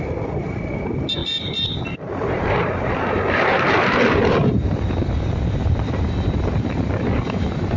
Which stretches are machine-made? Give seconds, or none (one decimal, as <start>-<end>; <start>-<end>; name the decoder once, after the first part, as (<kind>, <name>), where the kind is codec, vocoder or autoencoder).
0.0-1.2 (vocoder, BigVGAN v2); 1.7-7.8